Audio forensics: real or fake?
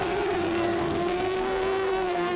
fake